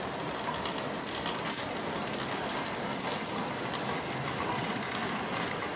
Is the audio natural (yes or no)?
yes